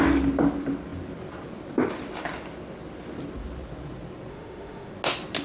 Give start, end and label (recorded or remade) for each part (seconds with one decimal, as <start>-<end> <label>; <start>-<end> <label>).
0.0-4.3 recorded; 4.3-4.9 remade; 4.9-5.4 recorded